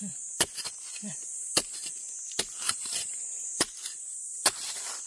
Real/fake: fake